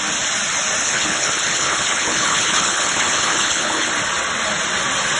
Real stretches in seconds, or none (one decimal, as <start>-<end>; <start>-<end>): 0.0-0.8; 3.9-5.2